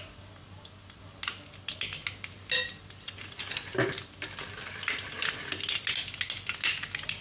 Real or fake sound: real